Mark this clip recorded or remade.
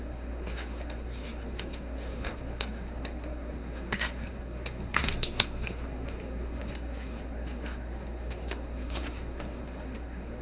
remade